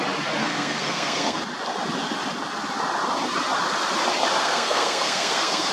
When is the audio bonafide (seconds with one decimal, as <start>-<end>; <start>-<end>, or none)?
0.0-0.4; 1.4-4.4